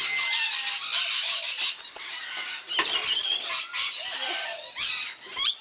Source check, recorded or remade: recorded